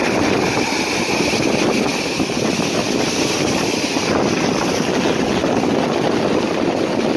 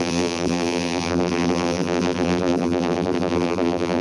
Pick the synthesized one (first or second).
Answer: second